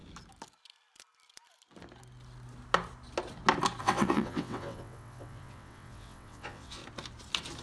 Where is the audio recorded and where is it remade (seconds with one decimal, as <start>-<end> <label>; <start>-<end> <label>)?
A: 0.0-3.8 recorded; 3.8-6.8 remade; 6.8-7.6 recorded